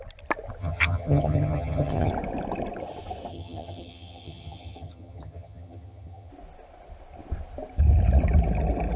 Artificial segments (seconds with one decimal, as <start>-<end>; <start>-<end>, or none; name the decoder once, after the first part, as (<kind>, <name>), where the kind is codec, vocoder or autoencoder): 0.6-2.1 (vocoder, HiFi-GAN); 3.3-6.3